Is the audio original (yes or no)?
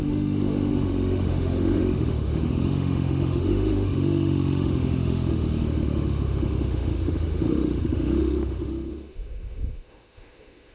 no